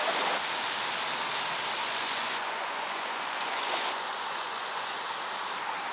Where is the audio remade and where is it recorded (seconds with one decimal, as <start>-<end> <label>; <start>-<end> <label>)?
0.0-1.8 recorded; 1.8-5.0 remade; 5.0-5.9 recorded